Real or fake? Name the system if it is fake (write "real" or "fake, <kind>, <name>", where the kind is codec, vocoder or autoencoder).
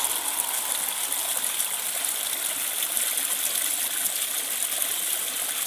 real